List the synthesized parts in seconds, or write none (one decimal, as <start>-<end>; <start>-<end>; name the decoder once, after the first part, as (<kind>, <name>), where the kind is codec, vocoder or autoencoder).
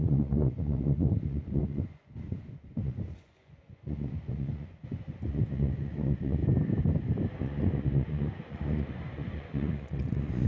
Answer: 0.0-6.4 (vocoder, Vocos); 7.4-10.5